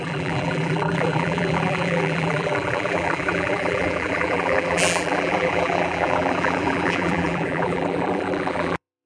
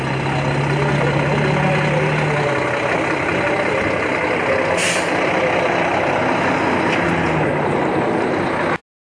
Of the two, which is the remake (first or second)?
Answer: first